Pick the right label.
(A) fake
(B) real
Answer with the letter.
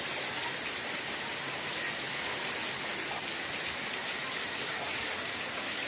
B